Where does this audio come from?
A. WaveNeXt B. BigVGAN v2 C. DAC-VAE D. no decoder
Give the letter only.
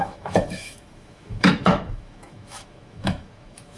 C